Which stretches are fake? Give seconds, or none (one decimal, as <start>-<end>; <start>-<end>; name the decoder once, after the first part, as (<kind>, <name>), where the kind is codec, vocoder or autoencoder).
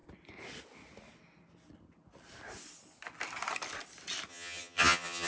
4.3-5.3 (vocoder, HiFi-GAN)